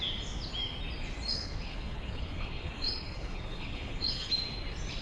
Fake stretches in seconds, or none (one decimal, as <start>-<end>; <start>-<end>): 1.3-4.3